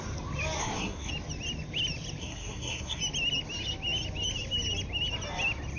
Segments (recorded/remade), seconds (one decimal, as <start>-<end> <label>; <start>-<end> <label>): 0.0-0.6 recorded; 0.6-1.1 remade; 1.1-2.2 recorded; 2.2-3.0 remade; 3.0-5.8 recorded